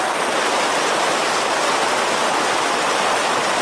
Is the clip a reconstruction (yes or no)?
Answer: no